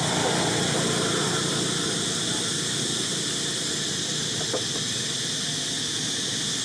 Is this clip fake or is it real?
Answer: real